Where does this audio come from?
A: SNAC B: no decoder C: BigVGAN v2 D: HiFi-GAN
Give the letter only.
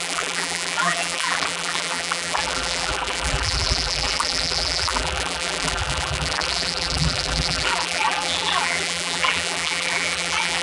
C